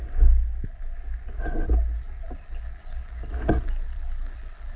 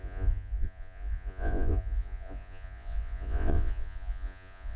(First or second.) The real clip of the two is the first